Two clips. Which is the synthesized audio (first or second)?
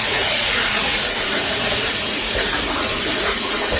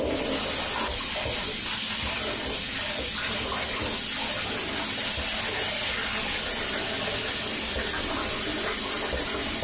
first